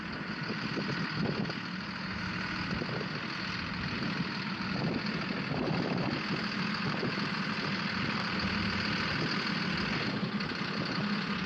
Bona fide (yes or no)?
yes